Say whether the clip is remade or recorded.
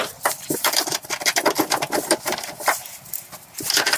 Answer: remade